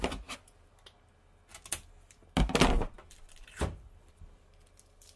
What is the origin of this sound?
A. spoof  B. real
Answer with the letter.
B